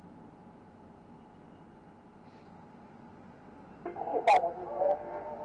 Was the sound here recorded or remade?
recorded